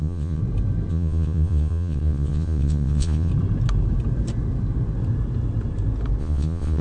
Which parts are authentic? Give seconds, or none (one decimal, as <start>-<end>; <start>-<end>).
0.4-0.9; 3.3-6.2